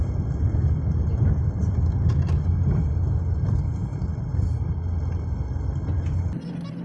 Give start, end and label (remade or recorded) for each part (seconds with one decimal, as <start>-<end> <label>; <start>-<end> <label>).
0.0-6.8 recorded